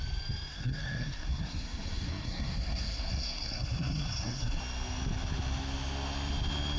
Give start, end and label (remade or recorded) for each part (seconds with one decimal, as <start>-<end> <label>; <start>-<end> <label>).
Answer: 0.0-0.5 recorded; 0.5-4.6 remade; 4.6-6.8 recorded